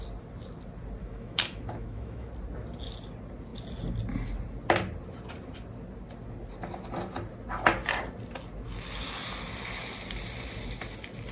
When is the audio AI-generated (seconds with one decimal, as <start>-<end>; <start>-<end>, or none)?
1.0-2.3